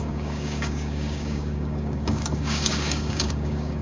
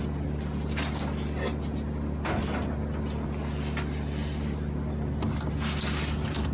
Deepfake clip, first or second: first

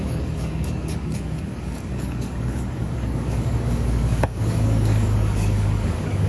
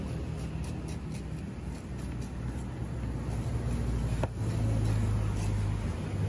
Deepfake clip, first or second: first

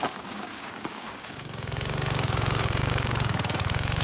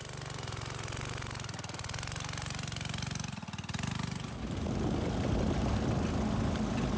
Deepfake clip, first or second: first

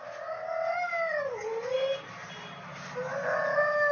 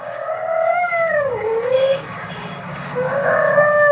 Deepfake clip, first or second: second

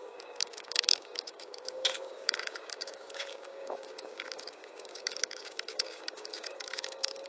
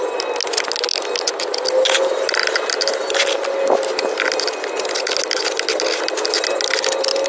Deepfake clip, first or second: first